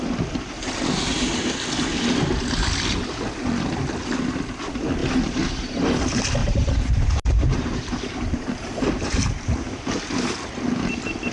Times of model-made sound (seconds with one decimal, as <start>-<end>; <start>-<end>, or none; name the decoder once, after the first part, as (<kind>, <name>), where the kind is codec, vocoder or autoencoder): 5.0-6.0 (vocoder, BigVGAN v2); 6.4-9.9